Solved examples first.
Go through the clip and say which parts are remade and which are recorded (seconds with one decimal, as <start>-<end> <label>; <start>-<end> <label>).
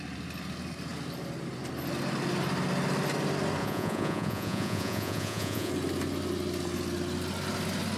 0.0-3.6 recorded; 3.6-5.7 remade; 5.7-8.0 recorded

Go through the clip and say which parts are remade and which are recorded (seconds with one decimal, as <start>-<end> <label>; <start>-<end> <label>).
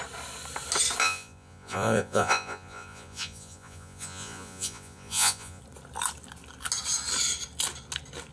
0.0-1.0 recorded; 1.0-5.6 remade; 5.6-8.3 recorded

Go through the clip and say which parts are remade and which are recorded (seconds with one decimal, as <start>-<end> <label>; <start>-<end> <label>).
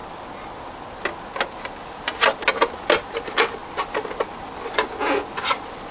0.0-5.9 recorded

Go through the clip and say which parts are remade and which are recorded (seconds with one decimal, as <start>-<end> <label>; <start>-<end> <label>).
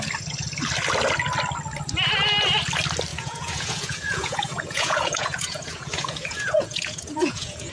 0.0-3.1 recorded; 3.1-7.7 remade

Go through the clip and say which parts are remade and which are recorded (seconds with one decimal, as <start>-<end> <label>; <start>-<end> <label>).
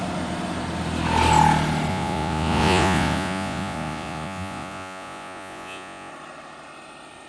0.0-1.9 recorded; 1.9-6.1 remade; 6.1-7.3 recorded